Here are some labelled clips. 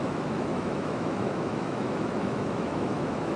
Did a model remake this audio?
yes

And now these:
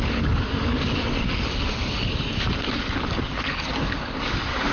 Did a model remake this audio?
yes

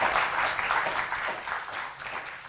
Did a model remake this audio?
no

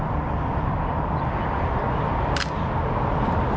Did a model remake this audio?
no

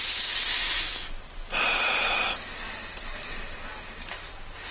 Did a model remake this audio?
no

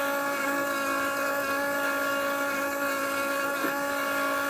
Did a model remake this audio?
yes